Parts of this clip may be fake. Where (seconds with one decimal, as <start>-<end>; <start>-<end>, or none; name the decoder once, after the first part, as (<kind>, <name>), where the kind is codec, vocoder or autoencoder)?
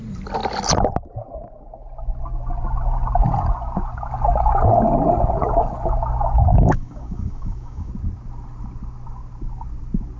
6.5-7.9 (codec, DAC)